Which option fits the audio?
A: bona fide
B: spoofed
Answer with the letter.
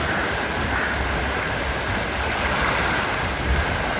A